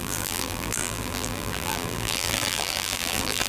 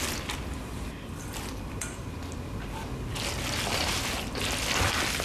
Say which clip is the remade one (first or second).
first